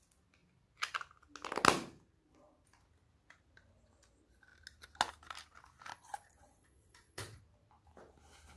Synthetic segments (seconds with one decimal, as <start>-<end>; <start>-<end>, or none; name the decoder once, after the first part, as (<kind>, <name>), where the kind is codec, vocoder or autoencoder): 5.9-7.4 (vocoder, Vocos)